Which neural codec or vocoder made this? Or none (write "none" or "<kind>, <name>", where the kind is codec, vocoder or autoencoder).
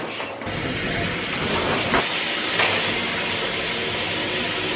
none